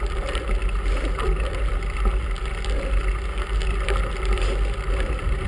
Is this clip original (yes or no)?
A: yes